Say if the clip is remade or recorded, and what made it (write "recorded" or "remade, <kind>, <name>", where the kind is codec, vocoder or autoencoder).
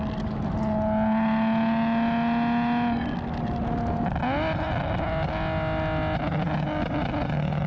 recorded